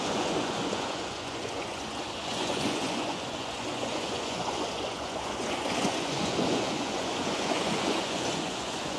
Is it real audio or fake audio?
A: fake